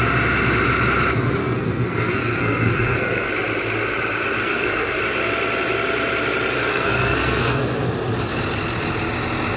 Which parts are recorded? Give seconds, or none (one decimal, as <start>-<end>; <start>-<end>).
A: 0.0-1.4; 3.3-4.4; 5.0-6.7; 7.6-9.6